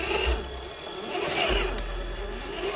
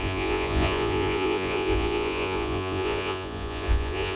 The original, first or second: first